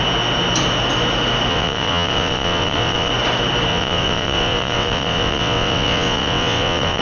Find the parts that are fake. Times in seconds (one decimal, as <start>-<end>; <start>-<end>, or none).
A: 1.5-3.1; 3.7-7.0